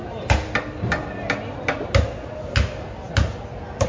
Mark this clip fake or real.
real